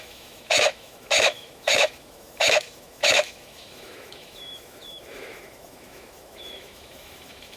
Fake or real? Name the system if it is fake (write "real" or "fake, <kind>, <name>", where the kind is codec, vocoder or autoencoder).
fake, autoencoder, DAC-VAE